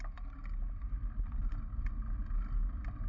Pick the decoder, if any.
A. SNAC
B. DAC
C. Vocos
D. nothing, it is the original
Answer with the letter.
D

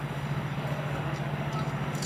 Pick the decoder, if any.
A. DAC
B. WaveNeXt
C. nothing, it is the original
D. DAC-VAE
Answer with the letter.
A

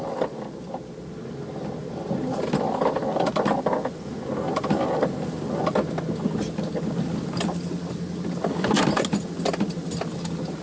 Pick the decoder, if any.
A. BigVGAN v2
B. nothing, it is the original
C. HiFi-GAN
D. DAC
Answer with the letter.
B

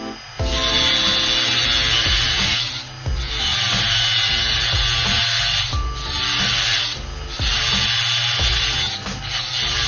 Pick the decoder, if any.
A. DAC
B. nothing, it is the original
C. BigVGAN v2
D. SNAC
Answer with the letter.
B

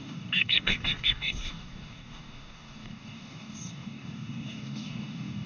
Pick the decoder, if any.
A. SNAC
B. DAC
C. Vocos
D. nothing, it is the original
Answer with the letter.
B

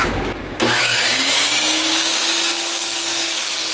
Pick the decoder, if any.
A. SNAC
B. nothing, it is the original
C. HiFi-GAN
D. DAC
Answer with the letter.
D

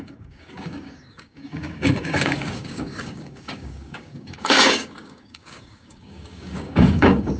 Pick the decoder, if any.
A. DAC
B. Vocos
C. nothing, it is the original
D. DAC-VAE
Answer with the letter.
A